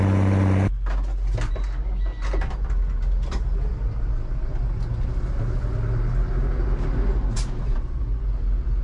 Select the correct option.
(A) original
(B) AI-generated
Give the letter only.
A